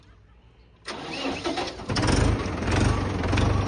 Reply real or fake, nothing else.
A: real